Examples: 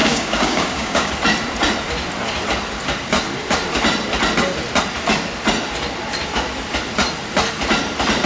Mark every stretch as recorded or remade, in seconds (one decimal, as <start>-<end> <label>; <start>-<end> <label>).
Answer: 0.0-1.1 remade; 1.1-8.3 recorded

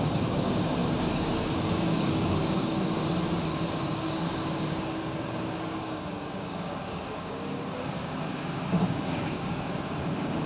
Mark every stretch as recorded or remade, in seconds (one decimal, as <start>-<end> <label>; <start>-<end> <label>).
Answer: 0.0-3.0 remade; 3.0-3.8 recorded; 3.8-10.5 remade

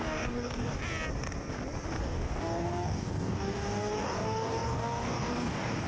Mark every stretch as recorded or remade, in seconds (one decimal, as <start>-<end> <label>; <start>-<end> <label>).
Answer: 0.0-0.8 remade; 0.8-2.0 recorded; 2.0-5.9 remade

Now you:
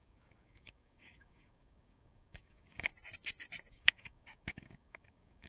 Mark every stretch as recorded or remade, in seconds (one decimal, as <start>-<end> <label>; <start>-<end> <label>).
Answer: 0.0-2.9 remade; 2.9-3.7 recorded; 3.7-5.5 remade

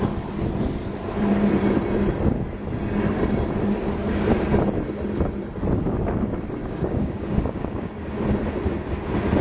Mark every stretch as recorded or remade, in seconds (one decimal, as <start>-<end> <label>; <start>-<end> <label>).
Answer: 0.0-6.6 recorded; 6.6-7.9 remade; 7.9-9.4 recorded

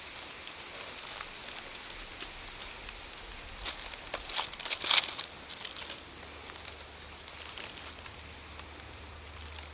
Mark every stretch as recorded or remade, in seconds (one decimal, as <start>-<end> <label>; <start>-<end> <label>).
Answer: 0.0-9.7 recorded